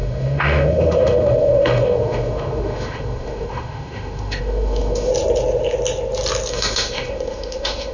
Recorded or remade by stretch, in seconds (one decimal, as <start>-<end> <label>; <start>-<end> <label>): 0.0-5.1 remade; 5.1-6.5 recorded; 6.5-7.9 remade